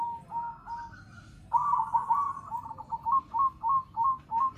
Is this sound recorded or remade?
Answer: recorded